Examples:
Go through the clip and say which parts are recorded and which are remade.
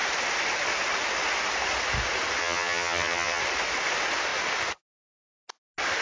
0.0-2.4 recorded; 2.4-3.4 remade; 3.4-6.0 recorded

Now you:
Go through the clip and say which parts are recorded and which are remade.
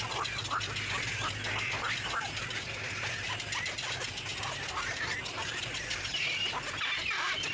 0.0-7.5 recorded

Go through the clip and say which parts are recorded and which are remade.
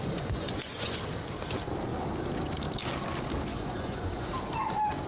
0.0-1.0 remade; 1.0-3.5 recorded; 3.5-4.3 remade; 4.3-5.1 recorded